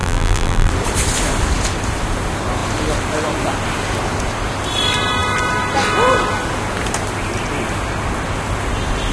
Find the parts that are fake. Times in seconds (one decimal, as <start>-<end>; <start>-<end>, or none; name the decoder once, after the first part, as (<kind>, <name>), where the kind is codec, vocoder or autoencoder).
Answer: 0.0-0.7 (vocoder, BigVGAN v2)